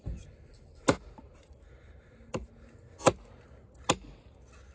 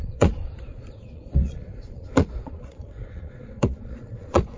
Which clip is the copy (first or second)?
second